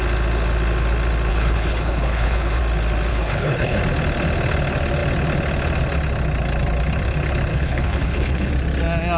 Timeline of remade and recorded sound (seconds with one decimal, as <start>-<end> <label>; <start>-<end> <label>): 0.0-1.3 recorded; 1.3-2.6 remade; 2.6-3.1 recorded; 3.1-3.8 remade; 3.8-7.5 recorded; 7.5-8.5 remade; 8.5-9.2 recorded